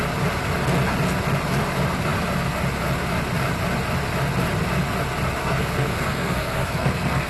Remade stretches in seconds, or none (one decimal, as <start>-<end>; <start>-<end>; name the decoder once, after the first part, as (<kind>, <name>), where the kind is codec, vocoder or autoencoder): 5.4-7.3 (codec, SNAC)